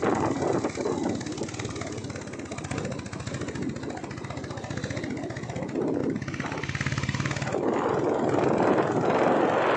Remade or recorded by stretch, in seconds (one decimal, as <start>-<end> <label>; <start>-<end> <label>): 0.0-6.0 recorded; 6.0-8.7 remade; 8.7-9.8 recorded